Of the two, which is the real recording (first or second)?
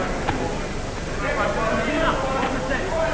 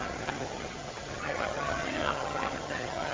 first